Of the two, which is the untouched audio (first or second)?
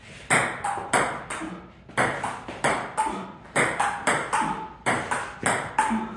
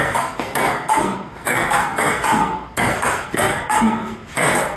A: first